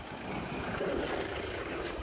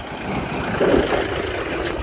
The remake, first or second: first